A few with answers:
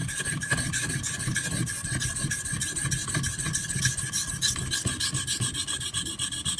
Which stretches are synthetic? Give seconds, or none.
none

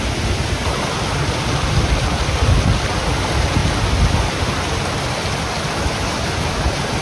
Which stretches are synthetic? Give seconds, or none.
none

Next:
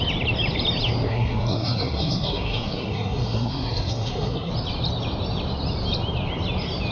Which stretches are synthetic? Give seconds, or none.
1.1-4.5 (codec, SNAC)

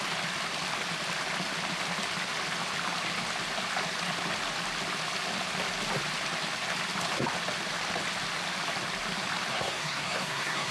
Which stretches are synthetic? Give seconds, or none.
9.5-10.7 (codec, SNAC)

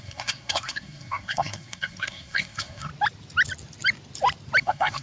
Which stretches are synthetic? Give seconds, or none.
0.0-2.9 (codec, SNAC); 4.6-5.0

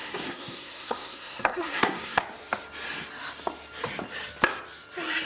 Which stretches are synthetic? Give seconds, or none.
0.0-2.2 (codec, SNAC)